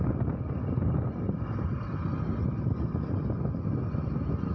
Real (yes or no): yes